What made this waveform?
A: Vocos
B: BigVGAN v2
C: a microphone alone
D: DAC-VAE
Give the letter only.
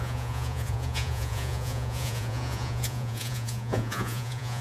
A